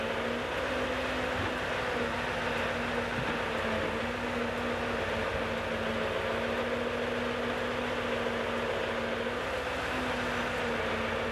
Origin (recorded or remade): recorded